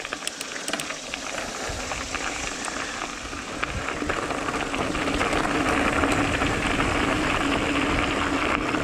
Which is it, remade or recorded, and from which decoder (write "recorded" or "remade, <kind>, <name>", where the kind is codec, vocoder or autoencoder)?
recorded